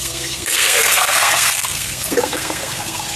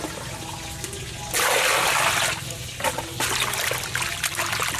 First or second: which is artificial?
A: first